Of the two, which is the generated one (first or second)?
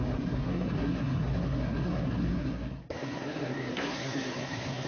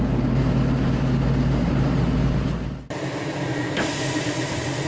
first